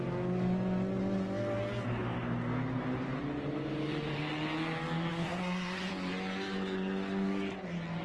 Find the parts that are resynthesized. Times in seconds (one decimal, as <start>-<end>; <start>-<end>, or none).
5.1-5.9